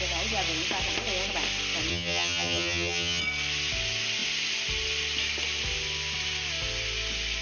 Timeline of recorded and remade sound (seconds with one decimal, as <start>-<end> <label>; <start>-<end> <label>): 0.0-1.9 recorded; 1.9-3.2 remade; 3.2-7.4 recorded